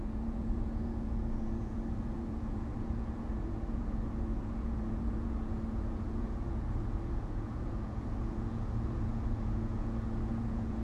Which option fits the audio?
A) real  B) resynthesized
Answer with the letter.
B